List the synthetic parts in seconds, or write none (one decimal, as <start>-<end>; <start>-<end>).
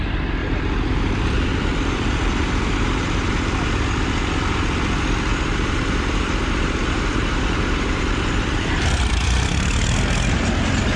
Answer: 0.4-3.3; 5.3-8.7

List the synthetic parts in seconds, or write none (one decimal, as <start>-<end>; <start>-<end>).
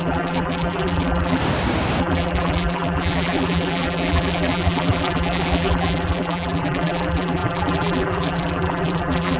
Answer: 0.0-1.4; 2.0-9.4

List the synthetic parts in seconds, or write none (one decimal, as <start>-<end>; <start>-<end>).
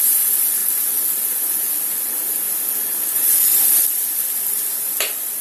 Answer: none